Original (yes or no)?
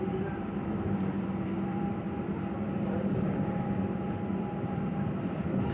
no